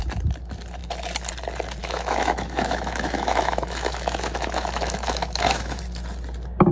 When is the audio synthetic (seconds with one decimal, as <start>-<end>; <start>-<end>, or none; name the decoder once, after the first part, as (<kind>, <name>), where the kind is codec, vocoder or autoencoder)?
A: 1.8-5.8 (autoencoder, DAC-VAE)